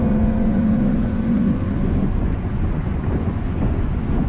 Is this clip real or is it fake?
fake